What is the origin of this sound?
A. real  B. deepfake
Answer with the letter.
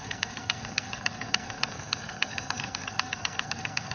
B